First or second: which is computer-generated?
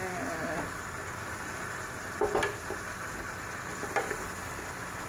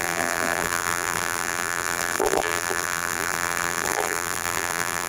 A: second